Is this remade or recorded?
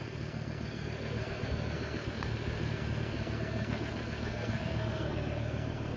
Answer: remade